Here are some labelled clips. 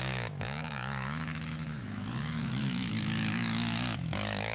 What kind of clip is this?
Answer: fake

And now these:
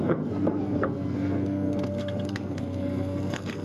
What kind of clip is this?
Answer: fake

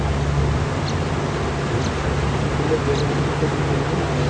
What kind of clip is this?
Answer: real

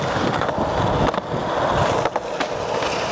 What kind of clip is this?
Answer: real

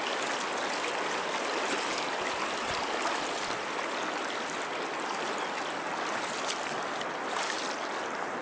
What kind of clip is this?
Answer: real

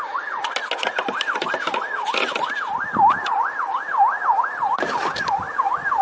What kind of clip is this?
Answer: real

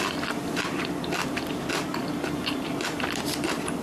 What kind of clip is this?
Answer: real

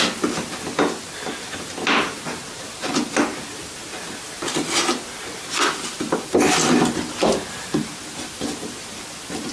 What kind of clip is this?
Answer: real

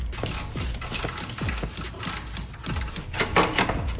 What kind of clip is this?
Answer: real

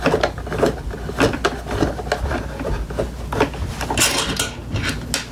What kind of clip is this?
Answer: real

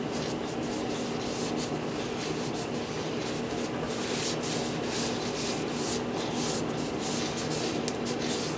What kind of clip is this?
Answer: real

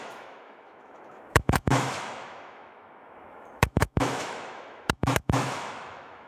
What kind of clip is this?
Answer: fake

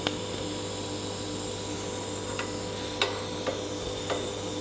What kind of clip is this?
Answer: real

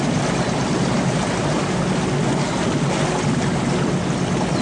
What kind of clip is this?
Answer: real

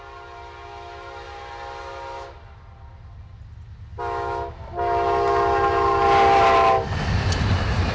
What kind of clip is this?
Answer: real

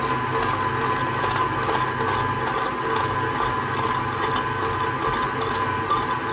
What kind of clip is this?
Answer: real